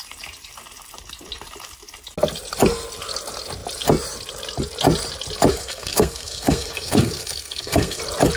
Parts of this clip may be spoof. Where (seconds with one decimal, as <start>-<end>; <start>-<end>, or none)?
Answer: 5.5-8.0